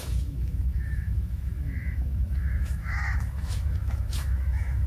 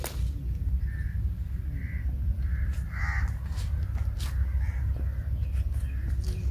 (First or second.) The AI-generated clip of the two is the first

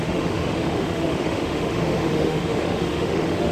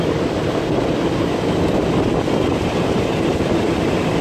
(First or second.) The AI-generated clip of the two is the first